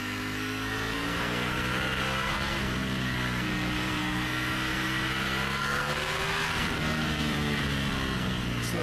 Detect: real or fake fake